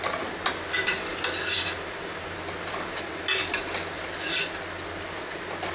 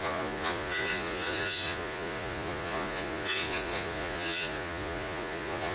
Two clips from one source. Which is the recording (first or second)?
first